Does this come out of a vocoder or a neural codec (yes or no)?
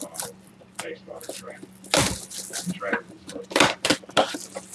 no